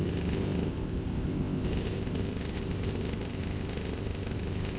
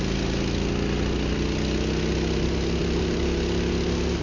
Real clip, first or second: second